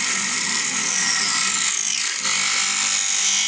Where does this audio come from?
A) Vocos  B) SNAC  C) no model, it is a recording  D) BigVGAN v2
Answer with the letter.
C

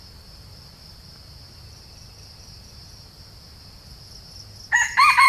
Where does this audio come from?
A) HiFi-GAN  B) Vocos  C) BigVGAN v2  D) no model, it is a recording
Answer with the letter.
D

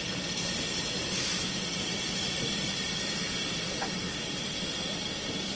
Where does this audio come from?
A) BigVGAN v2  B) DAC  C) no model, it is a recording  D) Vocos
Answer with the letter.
A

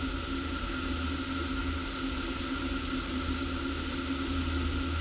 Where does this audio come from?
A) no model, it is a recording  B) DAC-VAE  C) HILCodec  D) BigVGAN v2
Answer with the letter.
D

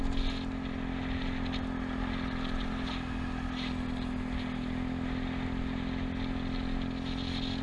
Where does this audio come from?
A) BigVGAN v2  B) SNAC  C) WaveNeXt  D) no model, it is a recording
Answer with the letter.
D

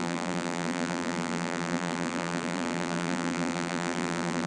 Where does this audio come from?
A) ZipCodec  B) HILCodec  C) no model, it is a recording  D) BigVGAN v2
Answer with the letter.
D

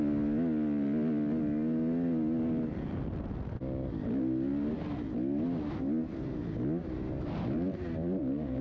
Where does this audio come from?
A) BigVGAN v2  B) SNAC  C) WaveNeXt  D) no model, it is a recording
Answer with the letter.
D